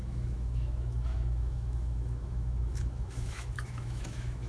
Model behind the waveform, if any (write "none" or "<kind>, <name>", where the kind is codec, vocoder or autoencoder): autoencoder, DAC-VAE